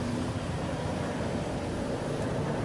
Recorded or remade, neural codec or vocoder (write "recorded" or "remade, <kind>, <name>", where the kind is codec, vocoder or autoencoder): recorded